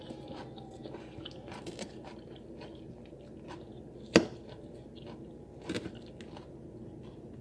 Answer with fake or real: real